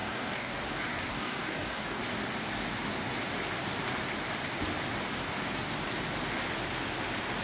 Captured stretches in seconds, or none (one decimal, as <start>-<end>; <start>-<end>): 0.5-1.1; 2.0-7.4